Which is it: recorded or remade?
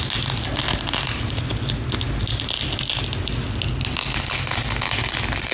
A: recorded